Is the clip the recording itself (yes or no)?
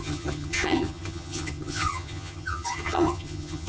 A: no